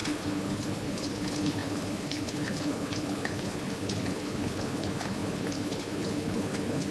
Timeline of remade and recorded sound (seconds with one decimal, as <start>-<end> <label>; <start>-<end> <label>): 0.0-6.9 remade